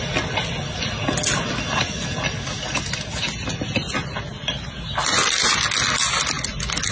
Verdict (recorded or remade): recorded